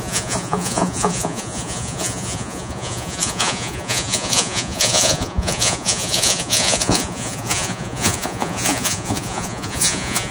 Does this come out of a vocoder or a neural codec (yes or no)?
yes